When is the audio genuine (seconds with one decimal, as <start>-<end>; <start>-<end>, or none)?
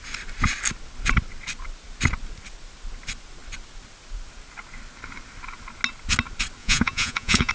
0.0-6.6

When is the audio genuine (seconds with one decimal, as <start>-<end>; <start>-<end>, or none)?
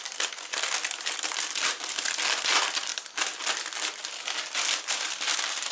2.9-4.9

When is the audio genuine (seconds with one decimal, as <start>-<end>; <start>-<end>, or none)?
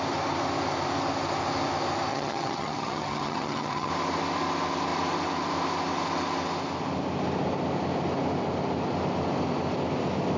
0.0-2.1; 3.9-10.4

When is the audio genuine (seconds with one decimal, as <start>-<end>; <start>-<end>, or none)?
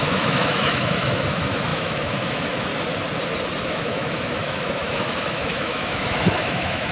2.7-3.6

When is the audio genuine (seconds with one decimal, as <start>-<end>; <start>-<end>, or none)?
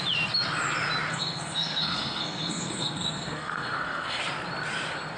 0.0-1.1; 4.2-5.2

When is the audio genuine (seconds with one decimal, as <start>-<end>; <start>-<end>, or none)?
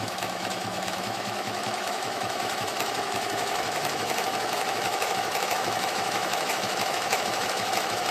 none